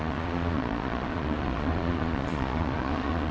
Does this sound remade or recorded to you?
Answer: remade